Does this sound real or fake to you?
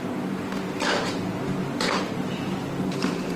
real